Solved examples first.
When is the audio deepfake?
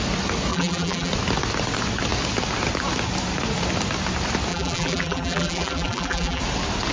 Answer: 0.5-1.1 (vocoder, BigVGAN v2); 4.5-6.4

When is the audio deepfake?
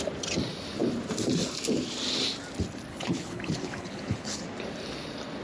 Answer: 2.9-4.4 (codec, HILCodec)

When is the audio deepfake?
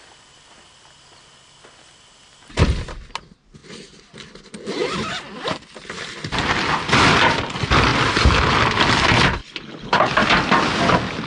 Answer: 9.4-10.1 (codec, HILCodec)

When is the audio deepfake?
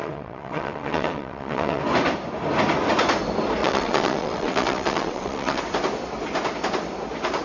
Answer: 0.0-1.8 (vocoder, WaveNeXt); 3.6-5.6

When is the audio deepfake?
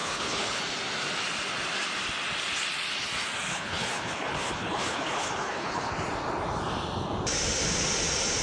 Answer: 0.0-0.6 (codec, HILCodec); 3.5-5.9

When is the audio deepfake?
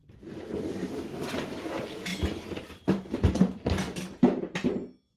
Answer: 0.0-1.7 (vocoder, BigVGAN v2); 2.1-4.7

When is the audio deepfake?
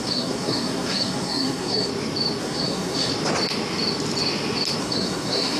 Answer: 0.0-1.9 (codec, SNAC); 2.4-3.1; 4.8-5.6